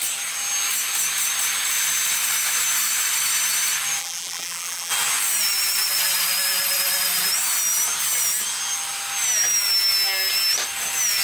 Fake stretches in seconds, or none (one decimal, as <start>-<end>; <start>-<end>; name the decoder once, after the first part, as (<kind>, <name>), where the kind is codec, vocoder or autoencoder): 4.0-4.9 (vocoder, BigVGAN v2)